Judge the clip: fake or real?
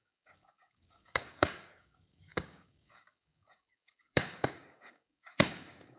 fake